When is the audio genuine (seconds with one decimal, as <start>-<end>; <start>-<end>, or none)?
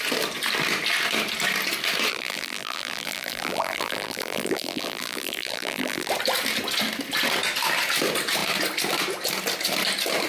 0.0-2.1; 6.1-10.3